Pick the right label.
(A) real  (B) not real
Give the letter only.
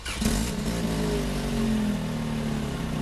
A